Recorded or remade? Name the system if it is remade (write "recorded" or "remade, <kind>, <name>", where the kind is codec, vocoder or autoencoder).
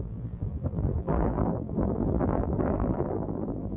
remade, vocoder, BigVGAN v2